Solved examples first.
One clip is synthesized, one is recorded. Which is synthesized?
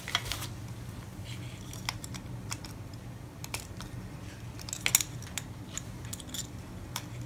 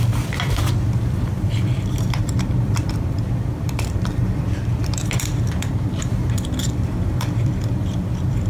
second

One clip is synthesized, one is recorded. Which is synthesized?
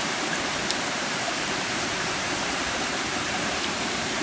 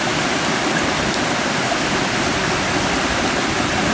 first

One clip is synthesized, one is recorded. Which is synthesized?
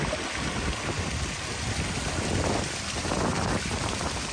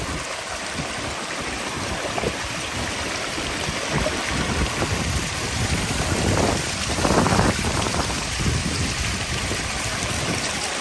second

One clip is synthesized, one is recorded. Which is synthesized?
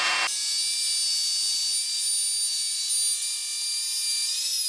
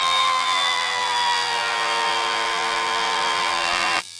second